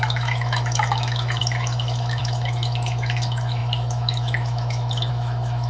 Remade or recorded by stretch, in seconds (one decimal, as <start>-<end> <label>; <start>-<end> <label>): 0.0-5.7 remade